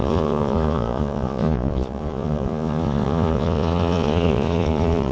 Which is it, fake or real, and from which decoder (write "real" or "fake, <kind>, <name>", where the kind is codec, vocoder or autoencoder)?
fake, vocoder, Vocos